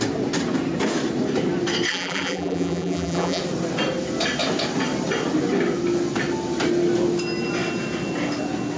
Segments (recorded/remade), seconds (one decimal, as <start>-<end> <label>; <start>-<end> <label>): 0.0-1.9 recorded; 1.9-3.4 remade; 3.4-8.8 recorded